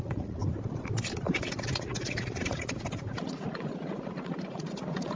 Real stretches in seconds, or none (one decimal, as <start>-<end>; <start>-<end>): 0.4-1.3